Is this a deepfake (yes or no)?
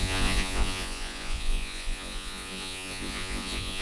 yes